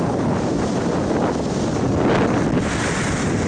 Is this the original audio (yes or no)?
yes